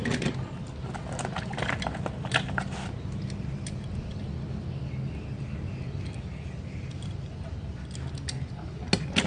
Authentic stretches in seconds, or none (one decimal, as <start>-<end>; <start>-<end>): 0.0-9.3